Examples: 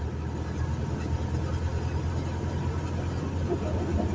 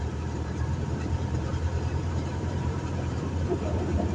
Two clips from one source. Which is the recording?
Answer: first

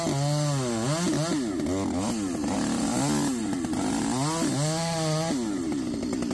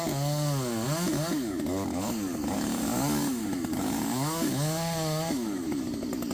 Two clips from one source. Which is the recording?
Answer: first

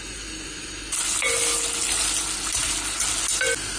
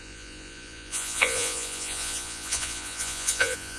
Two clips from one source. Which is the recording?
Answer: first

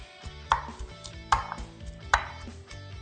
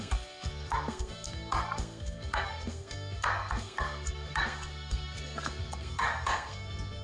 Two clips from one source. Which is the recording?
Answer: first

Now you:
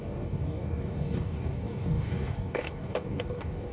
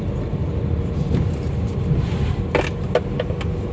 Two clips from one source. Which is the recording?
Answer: second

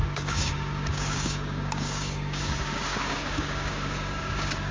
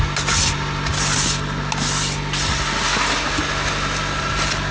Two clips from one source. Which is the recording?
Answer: second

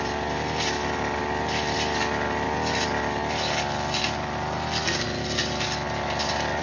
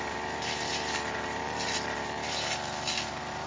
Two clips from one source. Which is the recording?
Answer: first